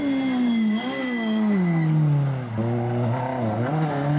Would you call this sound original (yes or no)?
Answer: yes